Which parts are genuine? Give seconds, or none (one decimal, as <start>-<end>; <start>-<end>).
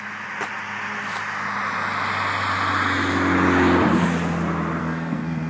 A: 0.0-4.8